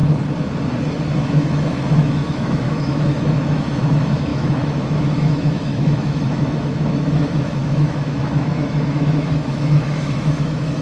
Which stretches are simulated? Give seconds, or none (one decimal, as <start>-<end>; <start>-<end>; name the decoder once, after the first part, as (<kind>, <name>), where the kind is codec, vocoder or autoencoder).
1.2-10.8 (autoencoder, DAC-VAE)